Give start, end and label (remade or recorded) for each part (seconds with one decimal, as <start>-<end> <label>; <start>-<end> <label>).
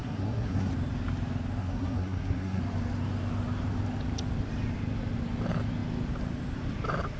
0.0-0.7 remade; 0.7-1.6 recorded; 1.6-2.6 remade; 2.6-7.2 recorded